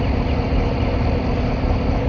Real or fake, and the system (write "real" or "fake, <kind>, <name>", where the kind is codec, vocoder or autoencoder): real